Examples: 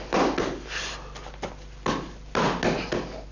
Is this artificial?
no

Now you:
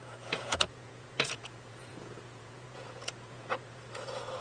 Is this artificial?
yes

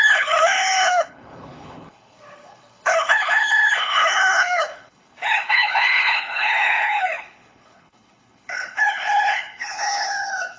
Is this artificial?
yes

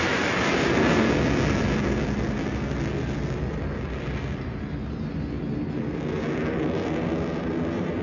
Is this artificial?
no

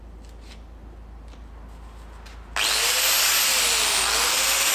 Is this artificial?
no